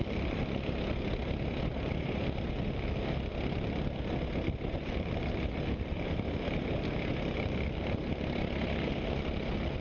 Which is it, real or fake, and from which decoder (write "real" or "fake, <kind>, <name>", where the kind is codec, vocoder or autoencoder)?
real